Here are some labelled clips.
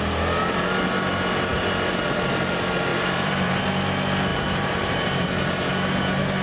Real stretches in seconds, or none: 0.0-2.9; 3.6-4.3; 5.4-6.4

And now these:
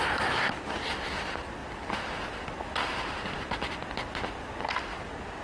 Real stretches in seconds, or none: 1.6-4.8

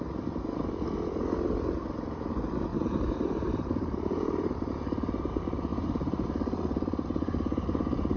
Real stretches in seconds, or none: 0.0-2.7; 4.7-5.7; 6.3-8.2

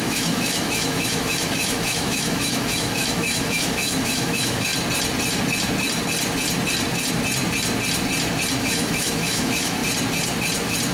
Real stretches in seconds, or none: 4.7-8.6; 9.8-10.9